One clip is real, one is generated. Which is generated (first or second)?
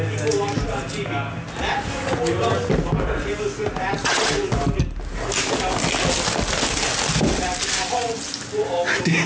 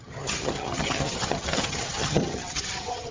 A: second